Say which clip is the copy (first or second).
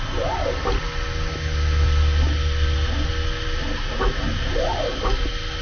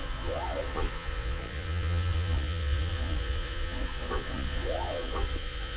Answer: second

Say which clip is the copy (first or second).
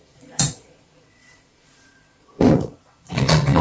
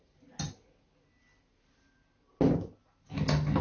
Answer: first